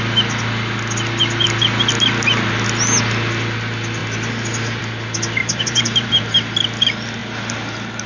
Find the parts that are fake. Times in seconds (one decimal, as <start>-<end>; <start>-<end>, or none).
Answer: 5.4-6.1

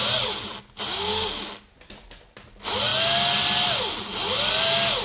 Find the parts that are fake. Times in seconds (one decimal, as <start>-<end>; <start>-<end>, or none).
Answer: none

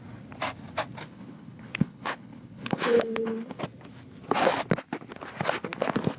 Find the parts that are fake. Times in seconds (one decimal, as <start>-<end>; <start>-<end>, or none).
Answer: 1.0-3.6